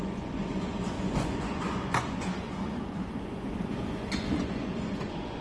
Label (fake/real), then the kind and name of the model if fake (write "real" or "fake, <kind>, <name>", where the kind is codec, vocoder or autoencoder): fake, vocoder, Vocos